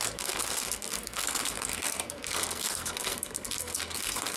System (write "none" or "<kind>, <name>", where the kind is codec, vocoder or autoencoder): codec, SNAC